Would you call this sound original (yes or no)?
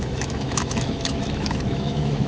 no